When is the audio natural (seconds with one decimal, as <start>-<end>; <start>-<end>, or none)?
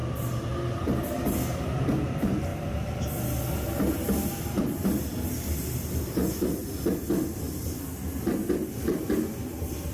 0.0-9.9